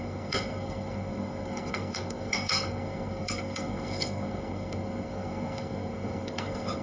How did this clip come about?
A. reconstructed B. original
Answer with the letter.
A